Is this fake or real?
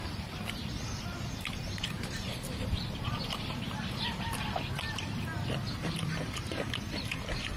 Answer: fake